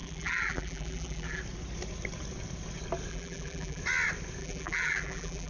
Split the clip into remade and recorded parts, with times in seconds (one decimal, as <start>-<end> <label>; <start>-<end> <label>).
0.0-1.4 remade; 1.4-3.1 recorded; 3.1-3.8 remade; 3.8-4.4 recorded; 4.4-5.5 remade